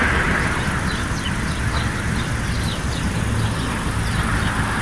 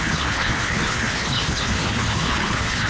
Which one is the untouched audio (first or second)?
first